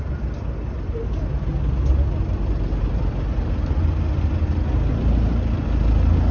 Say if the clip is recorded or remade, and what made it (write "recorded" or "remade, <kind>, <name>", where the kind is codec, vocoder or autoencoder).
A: recorded